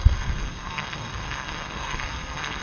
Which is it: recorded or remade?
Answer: remade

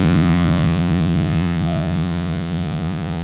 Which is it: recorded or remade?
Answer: remade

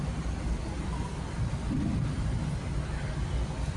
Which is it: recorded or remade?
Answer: recorded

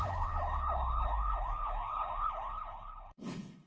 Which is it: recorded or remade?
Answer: remade